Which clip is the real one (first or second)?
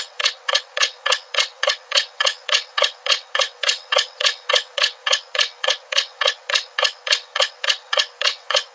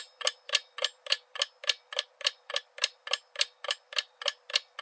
second